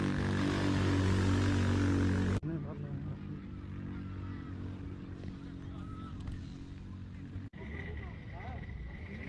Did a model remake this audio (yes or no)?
no